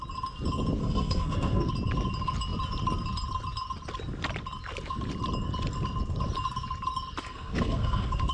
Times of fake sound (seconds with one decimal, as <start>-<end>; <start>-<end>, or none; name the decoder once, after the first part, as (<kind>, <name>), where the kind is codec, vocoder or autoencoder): 0.8-1.7 (codec, SNAC); 7.2-8.3